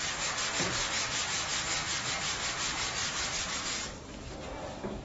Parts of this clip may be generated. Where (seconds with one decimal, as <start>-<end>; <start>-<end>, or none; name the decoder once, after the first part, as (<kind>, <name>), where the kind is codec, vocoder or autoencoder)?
1.5-2.1 (vocoder, BigVGAN v2)